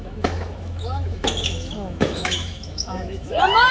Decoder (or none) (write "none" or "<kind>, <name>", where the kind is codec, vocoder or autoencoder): autoencoder, DAC-VAE